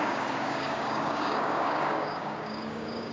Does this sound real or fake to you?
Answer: fake